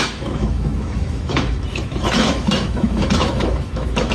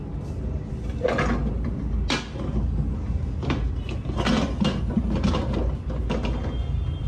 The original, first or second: second